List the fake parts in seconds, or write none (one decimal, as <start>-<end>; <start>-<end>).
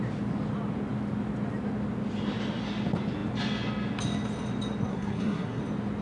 4.9-5.6